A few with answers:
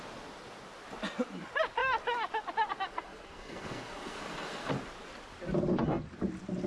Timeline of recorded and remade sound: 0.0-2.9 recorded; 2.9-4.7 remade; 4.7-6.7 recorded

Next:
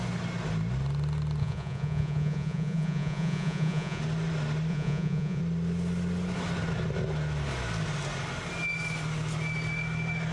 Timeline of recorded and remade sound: 0.0-1.4 recorded; 1.4-4.0 remade; 4.0-4.7 recorded; 4.7-5.4 remade; 5.4-10.3 recorded

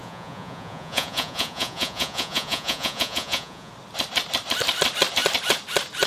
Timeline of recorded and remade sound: 0.0-3.7 remade; 3.7-6.1 recorded

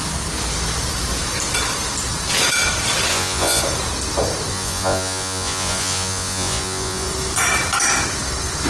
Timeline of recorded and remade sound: 0.0-3.1 recorded; 3.1-3.6 remade; 3.6-4.5 recorded; 4.5-7.1 remade; 7.1-8.7 recorded